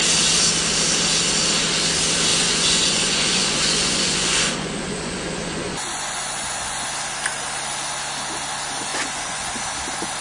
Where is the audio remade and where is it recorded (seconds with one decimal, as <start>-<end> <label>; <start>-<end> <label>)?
0.0-2.3 recorded; 2.3-6.9 remade; 6.9-8.9 recorded; 8.9-9.5 remade; 9.5-10.2 recorded